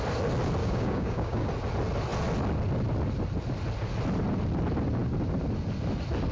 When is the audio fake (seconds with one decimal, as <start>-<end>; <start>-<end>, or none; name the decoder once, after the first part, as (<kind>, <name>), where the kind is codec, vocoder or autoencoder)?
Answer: 0.6-1.5 (codec, DAC)